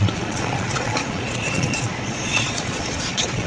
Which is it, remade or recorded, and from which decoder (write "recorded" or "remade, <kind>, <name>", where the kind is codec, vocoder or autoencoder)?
remade, vocoder, Vocos